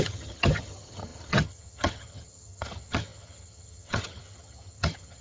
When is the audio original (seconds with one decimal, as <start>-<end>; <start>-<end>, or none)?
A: none